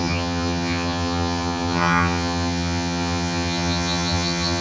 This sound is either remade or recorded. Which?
remade